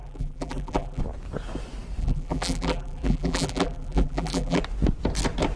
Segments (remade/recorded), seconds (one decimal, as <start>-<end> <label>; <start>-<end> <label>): 0.0-1.0 remade; 1.0-2.0 recorded; 2.0-4.6 remade; 4.6-5.6 recorded

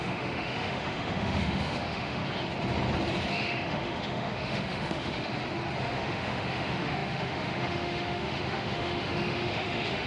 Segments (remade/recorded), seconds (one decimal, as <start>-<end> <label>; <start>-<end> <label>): 0.0-2.2 remade; 2.2-3.3 recorded; 3.3-5.3 remade; 5.3-5.8 recorded; 5.8-10.1 remade

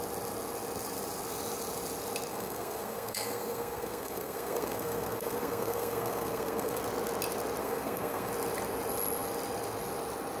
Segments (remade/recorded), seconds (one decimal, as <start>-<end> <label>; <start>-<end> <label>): 0.0-2.3 recorded; 2.3-6.8 remade; 6.8-7.6 recorded; 7.6-8.3 remade; 8.3-10.4 recorded

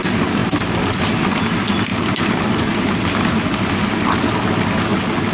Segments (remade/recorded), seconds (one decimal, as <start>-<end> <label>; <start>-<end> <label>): 0.0-1.9 recorded; 1.9-4.2 remade; 4.2-5.3 recorded

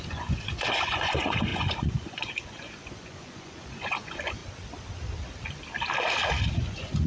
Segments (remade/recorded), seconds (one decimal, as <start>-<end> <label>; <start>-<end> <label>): 0.0-4.4 remade; 4.4-6.5 recorded; 6.5-7.1 remade

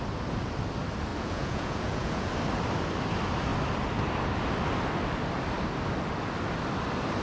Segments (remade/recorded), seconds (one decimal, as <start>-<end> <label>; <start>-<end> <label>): 0.0-1.1 recorded; 1.1-2.3 remade; 2.3-7.2 recorded

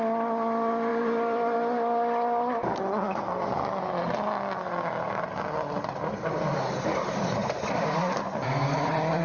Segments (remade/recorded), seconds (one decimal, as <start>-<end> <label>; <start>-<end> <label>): 0.0-0.9 recorded; 0.9-3.3 remade; 3.3-7.4 recorded; 7.4-9.2 remade

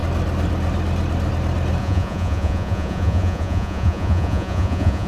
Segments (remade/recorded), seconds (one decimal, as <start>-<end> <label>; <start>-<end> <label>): 0.0-1.8 recorded; 1.8-5.1 remade